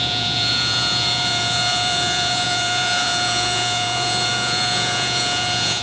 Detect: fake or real fake